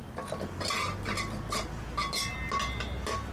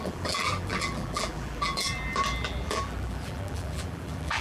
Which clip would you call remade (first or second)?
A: second